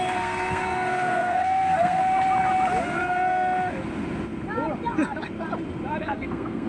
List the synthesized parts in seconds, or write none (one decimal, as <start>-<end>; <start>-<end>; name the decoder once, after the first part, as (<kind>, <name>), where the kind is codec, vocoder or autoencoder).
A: 0.0-2.0 (codec, SNAC); 6.0-6.7